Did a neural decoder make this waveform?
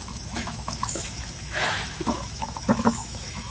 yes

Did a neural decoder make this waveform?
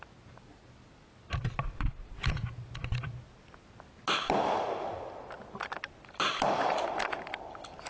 no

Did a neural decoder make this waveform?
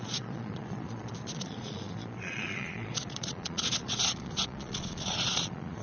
yes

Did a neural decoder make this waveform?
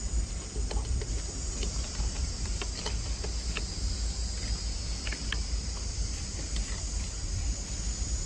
no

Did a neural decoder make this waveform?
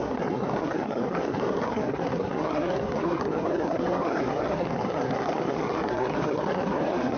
yes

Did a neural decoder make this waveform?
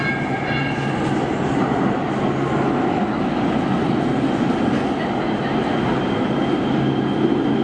no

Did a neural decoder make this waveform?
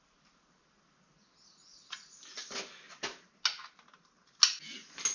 no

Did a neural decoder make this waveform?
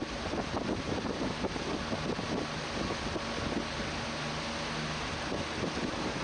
no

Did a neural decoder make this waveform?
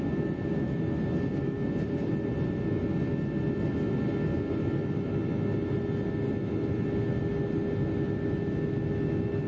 no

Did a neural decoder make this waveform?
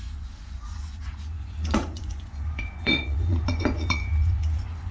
yes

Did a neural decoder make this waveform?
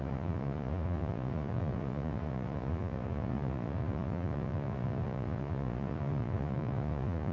yes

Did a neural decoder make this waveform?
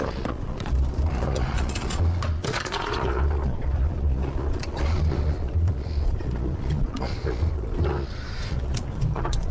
yes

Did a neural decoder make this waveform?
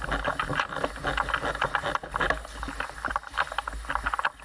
no